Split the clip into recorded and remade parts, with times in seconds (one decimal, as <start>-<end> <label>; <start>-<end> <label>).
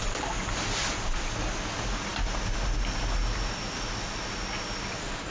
0.0-5.3 recorded